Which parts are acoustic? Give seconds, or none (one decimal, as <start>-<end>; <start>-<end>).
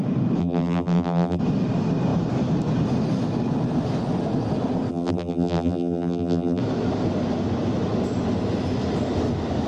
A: 0.0-0.4; 1.4-4.9; 6.6-9.7